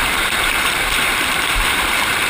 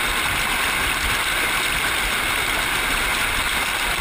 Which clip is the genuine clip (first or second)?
second